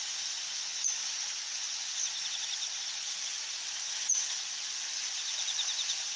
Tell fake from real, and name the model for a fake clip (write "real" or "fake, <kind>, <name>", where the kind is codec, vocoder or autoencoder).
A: fake, vocoder, BigVGAN v2